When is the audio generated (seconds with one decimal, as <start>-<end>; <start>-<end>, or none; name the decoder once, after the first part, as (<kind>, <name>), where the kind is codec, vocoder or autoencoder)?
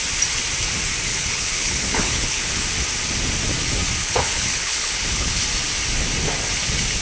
1.1-2.6 (codec, HILCodec); 4.0-5.4